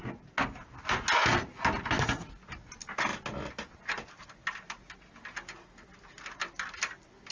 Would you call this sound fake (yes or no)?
no